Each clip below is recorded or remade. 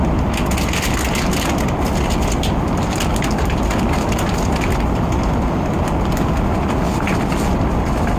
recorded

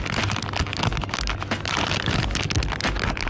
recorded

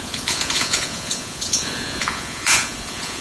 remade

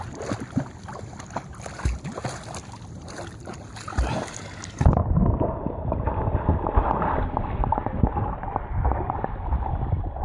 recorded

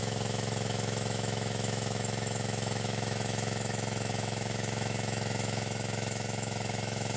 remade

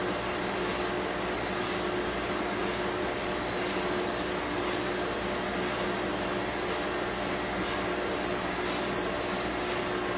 recorded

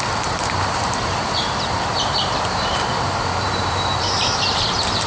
remade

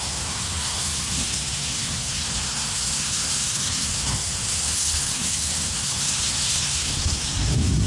remade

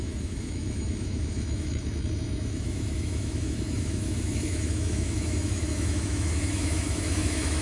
remade